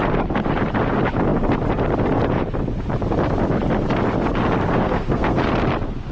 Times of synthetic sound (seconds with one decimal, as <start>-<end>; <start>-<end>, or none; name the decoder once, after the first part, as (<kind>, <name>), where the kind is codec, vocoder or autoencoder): 4.7-5.4 (codec, SNAC)